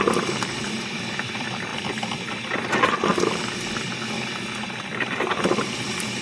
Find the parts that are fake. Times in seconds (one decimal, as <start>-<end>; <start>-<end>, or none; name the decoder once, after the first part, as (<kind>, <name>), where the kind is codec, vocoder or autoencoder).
0.0-1.7 (vocoder, BigVGAN v2); 5.4-6.2